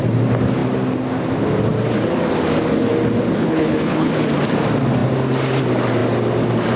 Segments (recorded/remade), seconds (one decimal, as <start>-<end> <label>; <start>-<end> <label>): 0.0-3.4 recorded; 3.4-4.1 remade; 4.1-6.8 recorded